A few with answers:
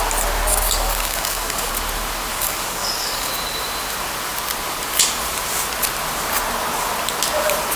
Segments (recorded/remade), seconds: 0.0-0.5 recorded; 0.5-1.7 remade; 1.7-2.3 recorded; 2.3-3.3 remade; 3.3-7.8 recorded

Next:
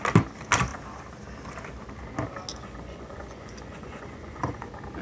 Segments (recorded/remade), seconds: 0.0-2.5 recorded; 2.5-4.6 remade; 4.6-5.0 recorded